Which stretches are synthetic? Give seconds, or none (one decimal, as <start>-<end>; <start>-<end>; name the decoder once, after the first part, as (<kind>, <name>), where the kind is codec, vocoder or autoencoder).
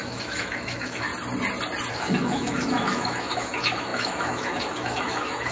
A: 0.0-1.1 (autoencoder, DAC-VAE); 1.9-5.5